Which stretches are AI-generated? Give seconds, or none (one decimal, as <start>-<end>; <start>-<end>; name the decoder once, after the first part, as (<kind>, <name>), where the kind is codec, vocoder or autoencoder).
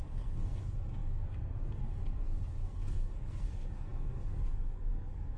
0.0-5.4 (codec, SNAC)